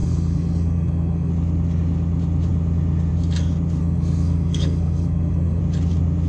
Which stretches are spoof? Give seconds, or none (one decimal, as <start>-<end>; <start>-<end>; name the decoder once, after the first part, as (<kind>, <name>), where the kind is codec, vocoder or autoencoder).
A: 0.0-1.3 (codec, SNAC); 3.8-5.6